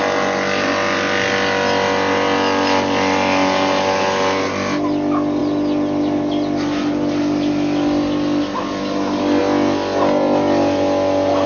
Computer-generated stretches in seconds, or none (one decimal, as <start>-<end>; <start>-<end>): none